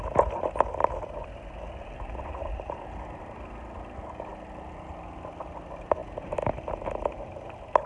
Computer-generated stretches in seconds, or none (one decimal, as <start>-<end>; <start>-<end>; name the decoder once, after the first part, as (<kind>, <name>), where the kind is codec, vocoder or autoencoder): 0.8-3.2 (vocoder, BigVGAN v2)